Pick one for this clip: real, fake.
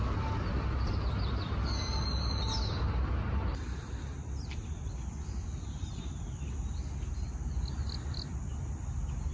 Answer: real